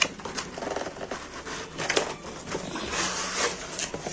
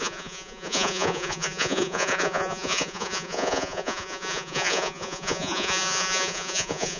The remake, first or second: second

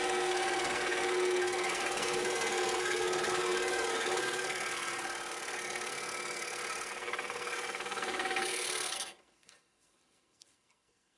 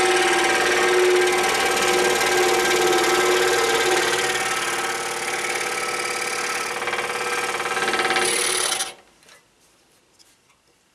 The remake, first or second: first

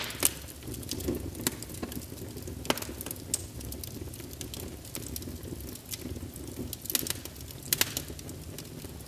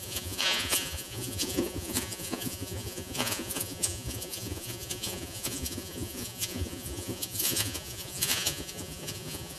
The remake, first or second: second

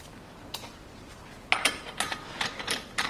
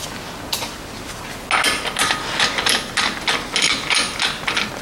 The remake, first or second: first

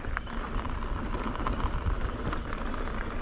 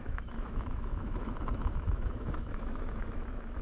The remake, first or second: second